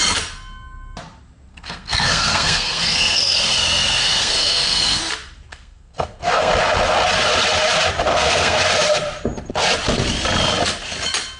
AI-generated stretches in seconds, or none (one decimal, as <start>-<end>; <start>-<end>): 1.5-5.0; 5.5-6.5; 8.1-8.6

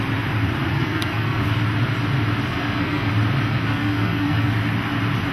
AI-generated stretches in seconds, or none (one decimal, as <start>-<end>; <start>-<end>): 0.7-1.4; 2.5-3.1; 3.5-4.5

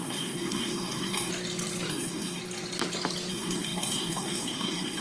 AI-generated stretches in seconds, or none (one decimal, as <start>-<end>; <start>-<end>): 0.0-1.3; 1.9-2.4; 3.3-5.0

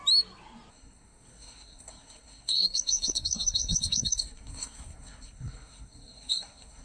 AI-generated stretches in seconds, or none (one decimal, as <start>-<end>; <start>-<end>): 0.7-6.8

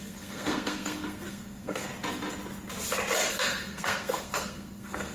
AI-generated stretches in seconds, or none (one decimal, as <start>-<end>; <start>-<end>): 0.0-1.9; 3.3-5.1

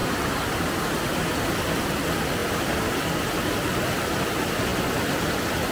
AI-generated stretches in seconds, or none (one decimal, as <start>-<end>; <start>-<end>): none